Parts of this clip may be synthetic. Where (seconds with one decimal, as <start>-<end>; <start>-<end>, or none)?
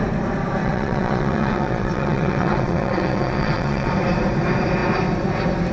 0.6-3.9